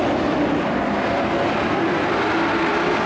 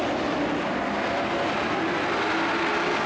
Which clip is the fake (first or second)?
first